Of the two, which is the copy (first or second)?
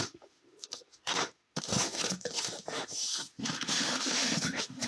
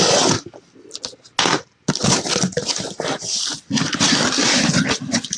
first